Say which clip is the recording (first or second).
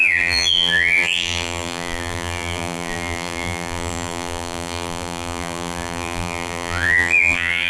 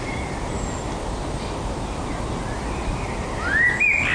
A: second